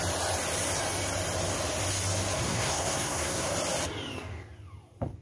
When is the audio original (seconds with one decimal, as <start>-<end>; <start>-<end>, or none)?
0.0-2.5; 3.5-5.2